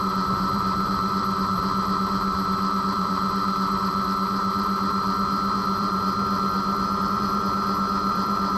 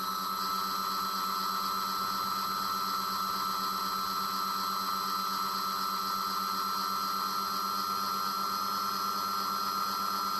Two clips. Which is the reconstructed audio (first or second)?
first